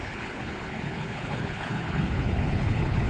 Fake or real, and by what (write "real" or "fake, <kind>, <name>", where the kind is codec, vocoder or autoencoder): fake, codec, HILCodec